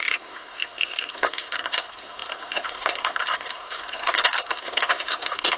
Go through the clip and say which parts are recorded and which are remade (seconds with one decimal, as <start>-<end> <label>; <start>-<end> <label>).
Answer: 0.0-5.6 remade